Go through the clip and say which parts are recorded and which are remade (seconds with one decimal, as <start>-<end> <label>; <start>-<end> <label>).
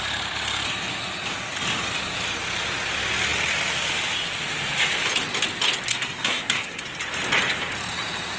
0.0-5.9 recorded; 5.9-6.8 remade; 6.8-8.4 recorded